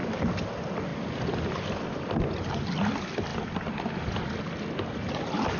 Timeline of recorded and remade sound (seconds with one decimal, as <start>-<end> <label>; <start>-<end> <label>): 0.0-0.5 remade; 0.5-0.9 recorded; 0.9-1.6 remade; 1.6-3.3 recorded; 3.3-5.6 remade